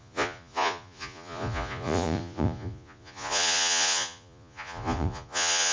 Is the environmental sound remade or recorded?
remade